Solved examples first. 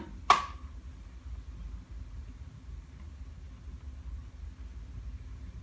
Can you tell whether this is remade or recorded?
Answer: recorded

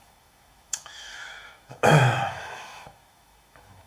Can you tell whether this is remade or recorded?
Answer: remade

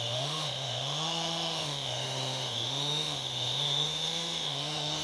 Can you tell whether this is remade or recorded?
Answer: remade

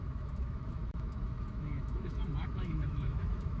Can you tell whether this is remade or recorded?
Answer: remade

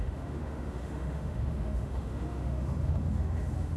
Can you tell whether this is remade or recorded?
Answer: remade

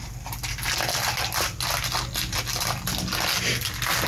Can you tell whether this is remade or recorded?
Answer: recorded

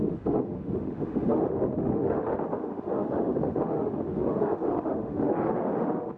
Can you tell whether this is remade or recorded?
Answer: remade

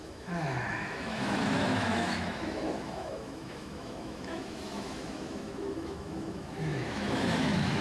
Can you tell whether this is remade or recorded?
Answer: remade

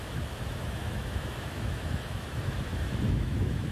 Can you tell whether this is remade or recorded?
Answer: remade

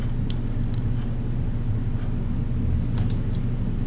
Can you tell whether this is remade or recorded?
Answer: recorded